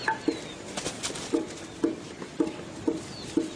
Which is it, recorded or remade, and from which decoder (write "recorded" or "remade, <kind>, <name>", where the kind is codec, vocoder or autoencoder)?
recorded